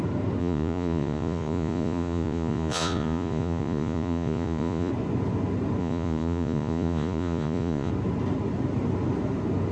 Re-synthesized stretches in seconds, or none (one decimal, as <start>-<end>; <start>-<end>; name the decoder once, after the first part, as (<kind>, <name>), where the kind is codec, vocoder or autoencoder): 0.4-4.9 (vocoder, Vocos); 5.8-7.9